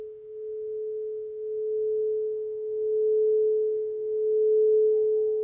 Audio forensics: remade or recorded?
recorded